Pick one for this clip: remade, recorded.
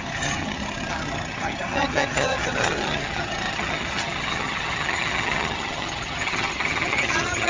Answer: remade